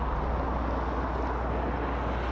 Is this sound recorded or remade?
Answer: recorded